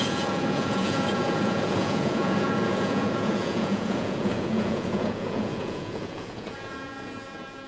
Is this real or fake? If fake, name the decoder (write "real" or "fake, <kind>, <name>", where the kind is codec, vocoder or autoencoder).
fake, vocoder, Vocos